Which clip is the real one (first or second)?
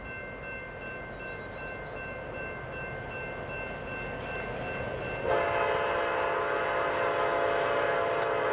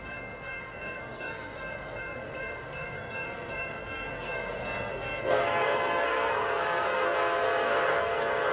first